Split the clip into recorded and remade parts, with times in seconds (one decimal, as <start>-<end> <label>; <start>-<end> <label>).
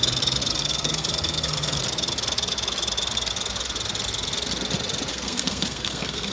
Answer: 0.0-0.5 recorded; 0.5-1.8 remade; 1.8-5.1 recorded; 5.1-6.3 remade